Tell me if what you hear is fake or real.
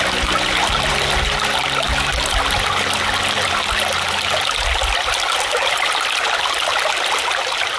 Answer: real